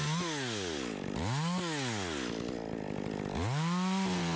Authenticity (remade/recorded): recorded